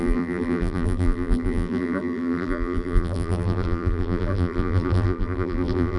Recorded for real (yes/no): no